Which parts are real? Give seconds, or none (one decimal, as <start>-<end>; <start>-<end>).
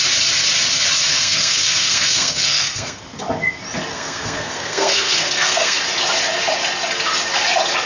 0.0-1.1; 3.0-3.9; 5.8-7.9